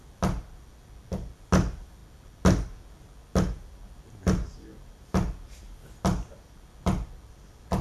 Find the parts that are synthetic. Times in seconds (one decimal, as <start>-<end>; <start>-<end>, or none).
none